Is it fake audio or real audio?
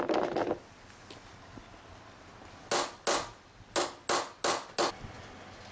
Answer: real